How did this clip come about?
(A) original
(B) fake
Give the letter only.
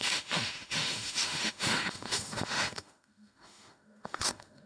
B